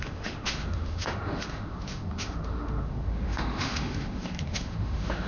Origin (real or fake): fake